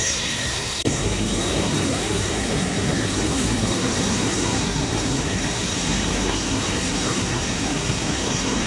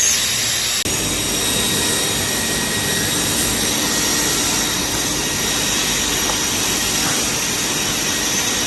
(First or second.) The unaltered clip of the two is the second